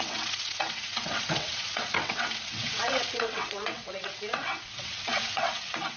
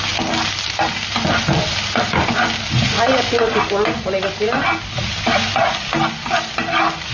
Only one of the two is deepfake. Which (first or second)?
first